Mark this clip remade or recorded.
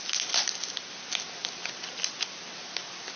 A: recorded